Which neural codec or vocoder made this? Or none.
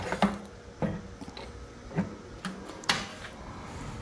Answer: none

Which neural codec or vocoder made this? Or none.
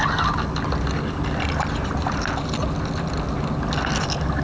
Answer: none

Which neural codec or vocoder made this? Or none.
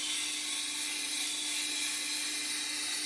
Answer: none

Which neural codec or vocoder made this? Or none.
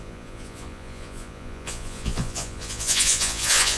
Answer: vocoder, Vocos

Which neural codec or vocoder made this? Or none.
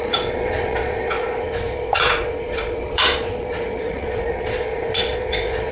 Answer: vocoder, Vocos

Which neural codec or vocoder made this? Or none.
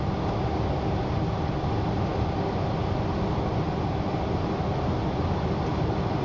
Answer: none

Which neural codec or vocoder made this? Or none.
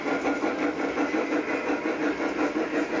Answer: none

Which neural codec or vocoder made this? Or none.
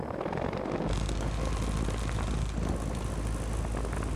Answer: none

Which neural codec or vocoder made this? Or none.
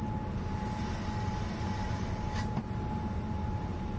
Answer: none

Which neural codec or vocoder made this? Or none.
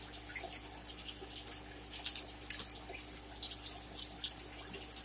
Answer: none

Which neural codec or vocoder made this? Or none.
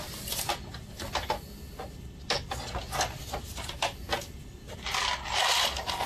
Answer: none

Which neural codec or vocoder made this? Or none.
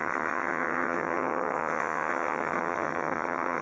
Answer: vocoder, HiFi-GAN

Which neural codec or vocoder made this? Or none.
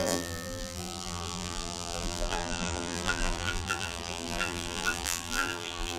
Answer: vocoder, BigVGAN v2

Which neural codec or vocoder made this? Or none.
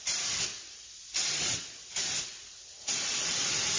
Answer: none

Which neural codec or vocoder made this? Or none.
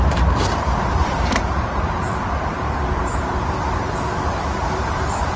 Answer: vocoder, BigVGAN v2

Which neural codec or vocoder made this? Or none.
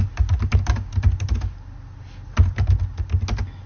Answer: none